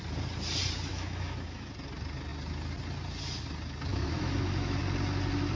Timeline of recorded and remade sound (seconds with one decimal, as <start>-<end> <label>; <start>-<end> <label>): 0.0-0.9 recorded; 0.9-1.7 remade; 1.7-3.9 recorded; 3.9-4.8 remade; 4.8-5.6 recorded